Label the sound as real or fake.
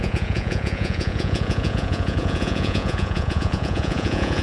fake